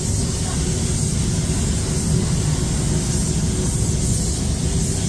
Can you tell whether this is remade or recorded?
recorded